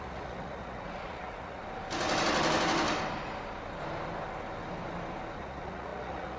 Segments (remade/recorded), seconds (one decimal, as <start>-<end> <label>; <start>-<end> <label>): 0.0-1.6 remade; 1.6-5.4 recorded; 5.4-6.4 remade